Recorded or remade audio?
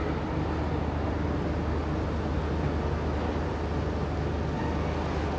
recorded